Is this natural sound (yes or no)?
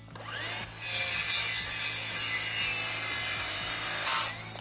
yes